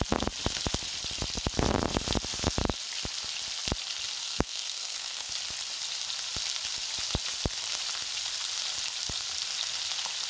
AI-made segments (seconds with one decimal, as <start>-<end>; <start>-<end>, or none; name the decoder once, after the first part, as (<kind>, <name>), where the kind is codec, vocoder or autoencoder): 4.2-5.3 (codec, SNAC)